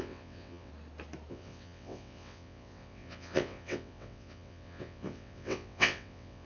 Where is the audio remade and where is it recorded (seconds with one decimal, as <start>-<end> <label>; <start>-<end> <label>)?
0.0-0.7 remade; 0.7-1.3 recorded; 1.3-6.4 remade

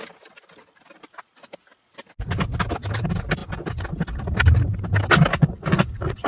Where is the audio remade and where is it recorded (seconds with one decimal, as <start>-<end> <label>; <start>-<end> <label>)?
0.0-5.3 recorded; 5.3-6.3 remade

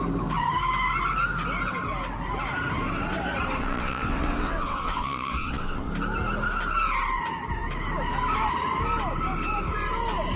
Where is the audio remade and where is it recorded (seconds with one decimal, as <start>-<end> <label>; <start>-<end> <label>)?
0.0-3.6 recorded; 3.6-5.9 remade; 5.9-10.4 recorded

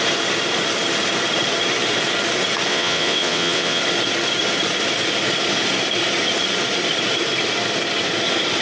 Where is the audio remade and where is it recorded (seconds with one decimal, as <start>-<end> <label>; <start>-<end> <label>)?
0.0-2.7 recorded; 2.7-3.8 remade; 3.8-8.6 recorded

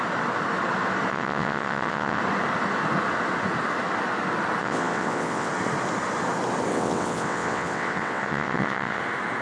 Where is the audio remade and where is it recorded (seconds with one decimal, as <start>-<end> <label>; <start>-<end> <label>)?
0.0-1.1 recorded; 1.1-2.2 remade; 2.2-4.6 recorded; 4.6-5.5 remade; 5.5-6.7 recorded; 6.7-9.0 remade; 9.0-9.4 recorded

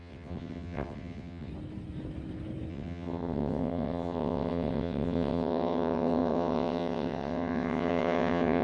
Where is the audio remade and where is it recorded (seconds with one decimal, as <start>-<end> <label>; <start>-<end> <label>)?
0.0-1.5 remade; 1.5-2.7 recorded; 2.7-8.6 remade

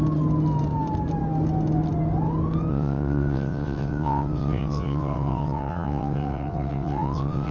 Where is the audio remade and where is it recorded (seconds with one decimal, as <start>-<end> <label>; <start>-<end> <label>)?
0.0-2.7 recorded; 2.7-7.5 remade

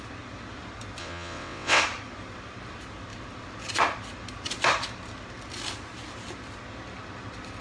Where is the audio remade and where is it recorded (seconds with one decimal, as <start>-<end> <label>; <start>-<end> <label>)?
0.0-1.0 recorded; 1.0-1.8 remade; 1.8-7.6 recorded